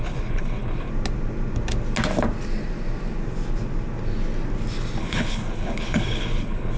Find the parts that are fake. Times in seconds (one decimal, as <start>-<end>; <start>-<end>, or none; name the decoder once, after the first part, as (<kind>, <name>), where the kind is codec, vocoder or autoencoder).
0.0-0.9 (codec, HILCodec); 5.0-6.8